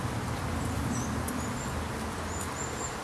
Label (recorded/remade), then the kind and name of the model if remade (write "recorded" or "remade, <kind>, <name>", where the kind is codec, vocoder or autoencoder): recorded